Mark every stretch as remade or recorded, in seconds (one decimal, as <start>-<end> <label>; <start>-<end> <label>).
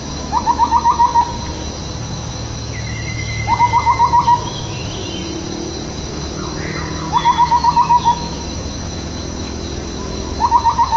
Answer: 0.0-1.1 remade; 1.1-2.0 recorded; 2.0-5.0 remade; 5.0-6.1 recorded; 6.1-11.0 remade